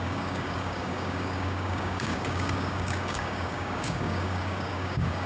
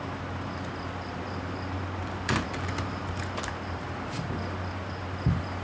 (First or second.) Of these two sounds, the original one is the second